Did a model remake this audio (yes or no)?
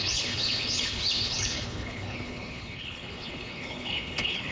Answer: yes